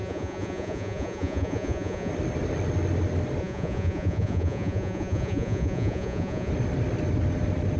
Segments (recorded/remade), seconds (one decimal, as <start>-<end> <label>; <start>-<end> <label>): 0.0-2.1 remade; 2.1-3.4 recorded; 3.4-6.5 remade; 6.5-7.8 recorded